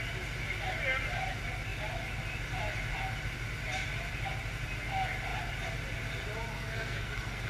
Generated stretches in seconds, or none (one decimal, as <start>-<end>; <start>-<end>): 6.5-7.5